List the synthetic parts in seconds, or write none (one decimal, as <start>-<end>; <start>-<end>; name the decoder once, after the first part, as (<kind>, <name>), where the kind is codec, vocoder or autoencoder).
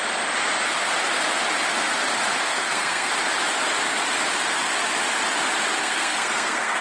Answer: 2.5-3.1 (codec, SNAC); 5.8-6.8